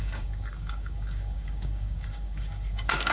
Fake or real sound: fake